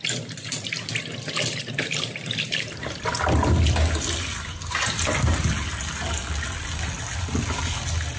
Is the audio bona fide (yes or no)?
yes